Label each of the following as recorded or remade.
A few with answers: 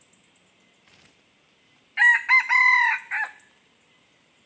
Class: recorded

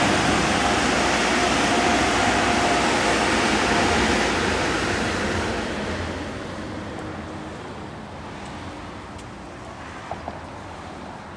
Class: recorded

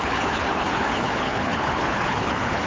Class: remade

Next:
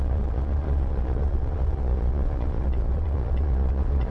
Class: remade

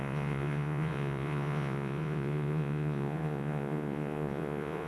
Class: remade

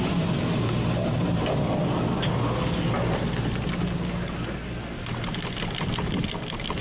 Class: recorded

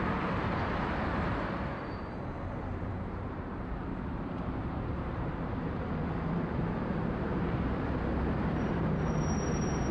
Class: remade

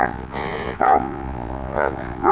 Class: remade